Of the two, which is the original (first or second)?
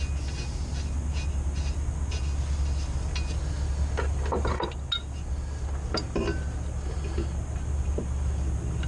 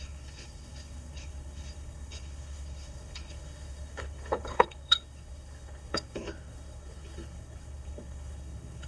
first